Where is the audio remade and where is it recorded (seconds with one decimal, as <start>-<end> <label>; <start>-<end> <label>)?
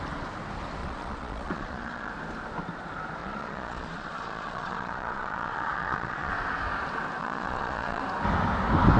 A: 0.0-0.8 recorded; 0.8-2.1 remade; 2.1-3.2 recorded; 3.2-6.3 remade; 6.3-7.2 recorded; 7.2-8.0 remade; 8.0-9.0 recorded